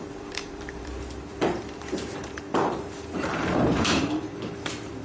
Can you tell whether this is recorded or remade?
remade